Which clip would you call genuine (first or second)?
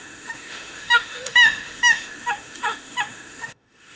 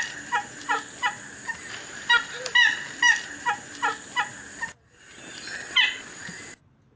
second